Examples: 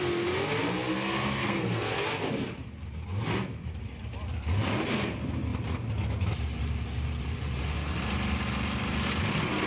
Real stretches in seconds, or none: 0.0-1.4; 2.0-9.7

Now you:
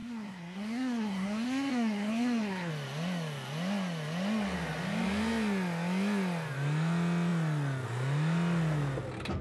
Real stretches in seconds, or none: 2.7-9.4

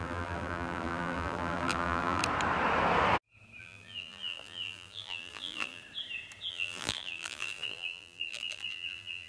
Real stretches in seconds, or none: 2.2-3.6; 5.8-6.5